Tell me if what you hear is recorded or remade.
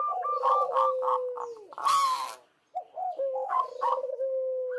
recorded